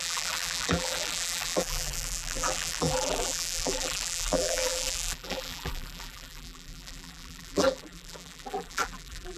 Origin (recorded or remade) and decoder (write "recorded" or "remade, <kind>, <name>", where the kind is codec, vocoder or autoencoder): remade, vocoder, BigVGAN v2